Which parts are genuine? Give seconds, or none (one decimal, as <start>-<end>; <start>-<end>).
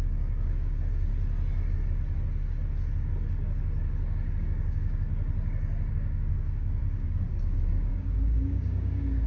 1.1-4.4; 5.1-5.9